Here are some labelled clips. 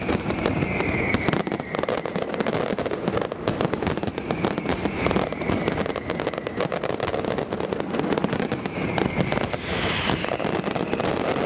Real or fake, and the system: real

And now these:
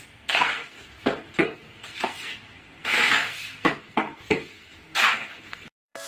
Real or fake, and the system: fake, codec, SNAC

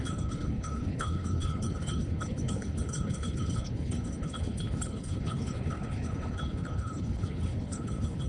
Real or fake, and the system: fake, codec, HILCodec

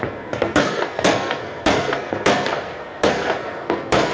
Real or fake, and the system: fake, codec, SNAC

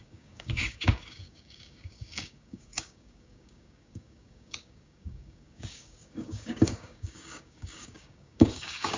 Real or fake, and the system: fake, codec, DAC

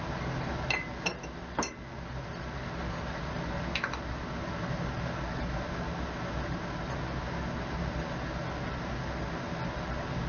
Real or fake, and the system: real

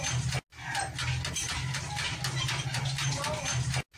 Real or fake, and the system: real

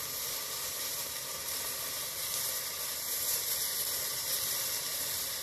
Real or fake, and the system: real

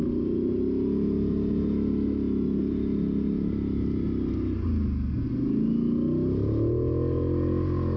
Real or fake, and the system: real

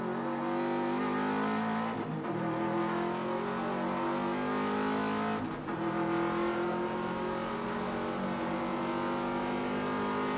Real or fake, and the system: real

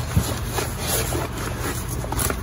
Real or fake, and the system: real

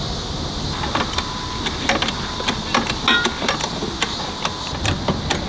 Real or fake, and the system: real